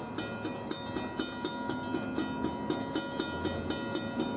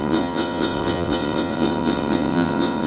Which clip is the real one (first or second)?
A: first